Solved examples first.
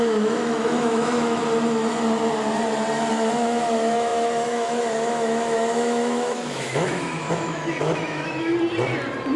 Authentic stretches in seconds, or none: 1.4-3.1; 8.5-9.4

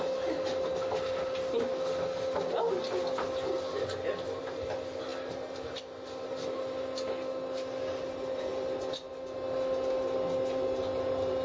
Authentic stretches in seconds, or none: 0.0-11.4

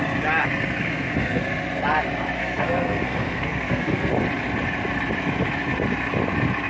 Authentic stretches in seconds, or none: 0.0-0.8; 1.4-2.4; 4.1-6.7

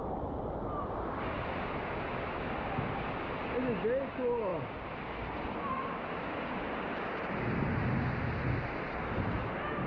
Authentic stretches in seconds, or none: 0.0-9.9

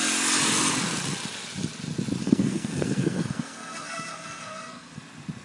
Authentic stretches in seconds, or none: 0.0-2.2; 5.0-5.4